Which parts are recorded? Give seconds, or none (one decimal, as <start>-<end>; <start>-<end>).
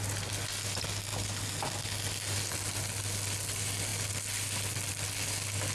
0.0-5.7